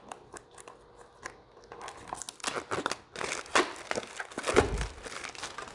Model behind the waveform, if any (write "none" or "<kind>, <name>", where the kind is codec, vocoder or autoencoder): none